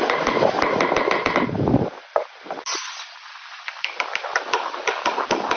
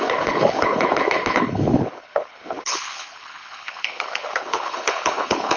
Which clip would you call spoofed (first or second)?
second